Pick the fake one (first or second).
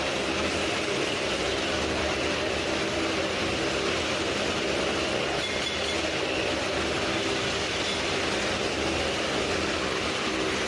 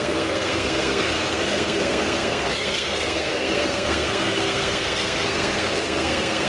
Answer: second